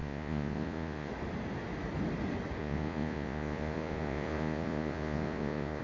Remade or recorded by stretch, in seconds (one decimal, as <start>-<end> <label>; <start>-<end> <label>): 0.0-1.1 remade; 1.1-2.6 recorded; 2.6-5.8 remade